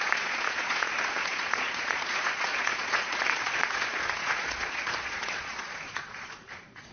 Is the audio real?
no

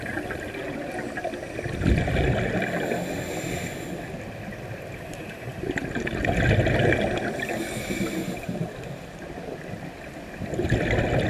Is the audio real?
yes